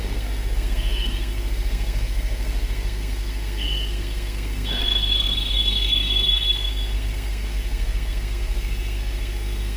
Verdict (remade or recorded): remade